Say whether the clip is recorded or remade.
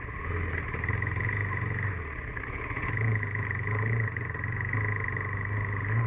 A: recorded